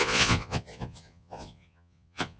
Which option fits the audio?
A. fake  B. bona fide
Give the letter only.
A